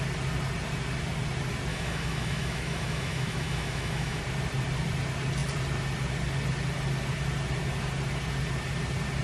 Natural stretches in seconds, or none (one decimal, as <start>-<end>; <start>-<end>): 0.0-1.7; 4.2-9.2